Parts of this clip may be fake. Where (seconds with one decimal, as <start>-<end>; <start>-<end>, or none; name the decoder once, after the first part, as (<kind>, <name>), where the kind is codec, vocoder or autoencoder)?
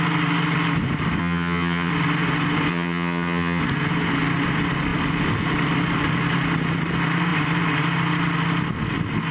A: 1.2-1.9 (vocoder, HiFi-GAN); 2.7-3.6